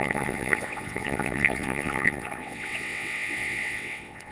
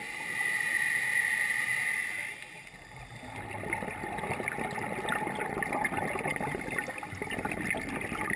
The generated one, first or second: first